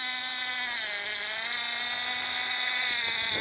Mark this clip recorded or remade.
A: recorded